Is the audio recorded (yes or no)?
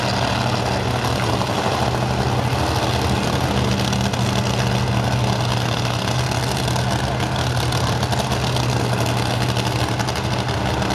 yes